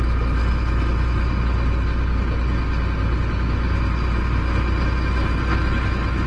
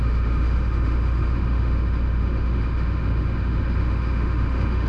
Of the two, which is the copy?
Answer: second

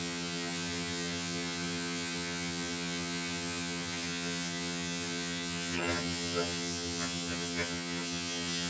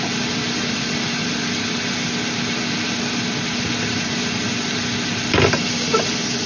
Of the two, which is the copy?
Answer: first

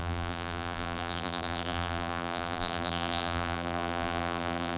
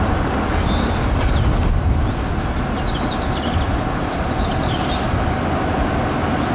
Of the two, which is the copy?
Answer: first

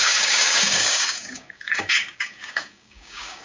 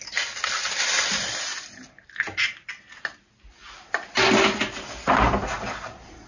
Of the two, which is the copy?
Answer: first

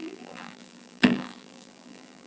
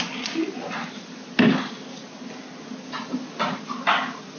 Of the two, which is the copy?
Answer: first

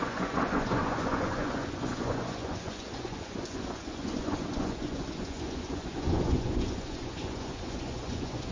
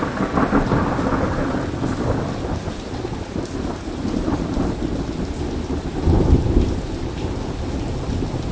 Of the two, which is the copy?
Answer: first